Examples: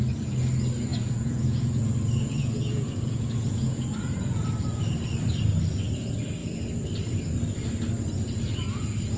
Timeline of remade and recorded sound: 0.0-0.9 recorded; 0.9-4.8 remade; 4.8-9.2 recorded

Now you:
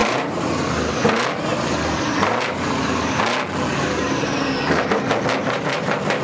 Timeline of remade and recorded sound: 0.0-0.7 remade; 0.7-1.5 recorded; 1.5-3.2 remade; 3.2-5.4 recorded; 5.4-6.2 remade

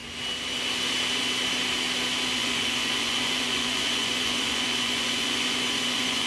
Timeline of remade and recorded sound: 0.0-2.4 recorded; 2.4-6.3 remade

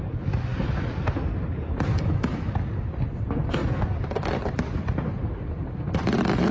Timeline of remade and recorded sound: 0.0-6.5 recorded

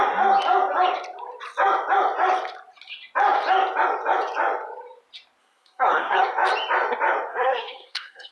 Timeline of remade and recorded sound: 0.0-5.4 recorded; 5.4-6.2 remade; 6.2-7.3 recorded; 7.3-8.3 remade